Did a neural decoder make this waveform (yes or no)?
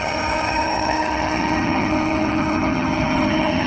yes